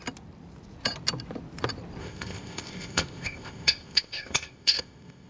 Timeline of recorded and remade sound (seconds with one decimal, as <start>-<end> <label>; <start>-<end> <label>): 0.0-2.0 recorded; 2.0-5.3 remade